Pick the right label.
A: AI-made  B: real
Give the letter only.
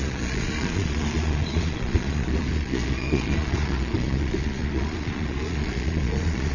A